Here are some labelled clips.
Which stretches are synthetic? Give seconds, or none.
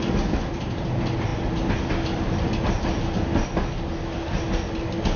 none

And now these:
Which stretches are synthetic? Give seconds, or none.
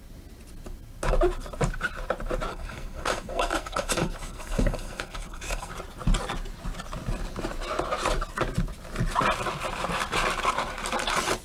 2.5-5.7 (codec, SNAC)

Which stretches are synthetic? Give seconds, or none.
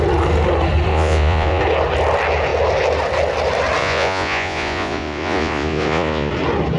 0.9-1.6 (vocoder, Vocos); 3.8-6.3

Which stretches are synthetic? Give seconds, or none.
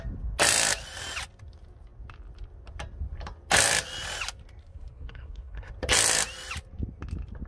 4.6-5.7 (codec, SNAC)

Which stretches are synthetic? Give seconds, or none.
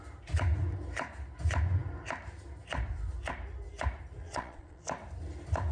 4.2-4.8 (vocoder, Vocos)